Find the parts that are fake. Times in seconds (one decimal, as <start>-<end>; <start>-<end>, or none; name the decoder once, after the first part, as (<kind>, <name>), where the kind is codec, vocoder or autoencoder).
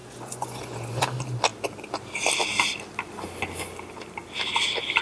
0.0-1.0 (vocoder, Vocos)